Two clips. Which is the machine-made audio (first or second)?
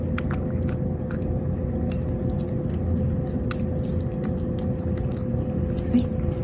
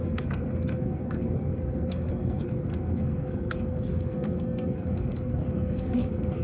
second